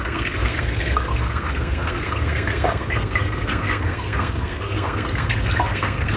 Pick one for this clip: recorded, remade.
remade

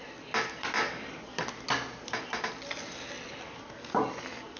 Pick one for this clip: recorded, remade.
recorded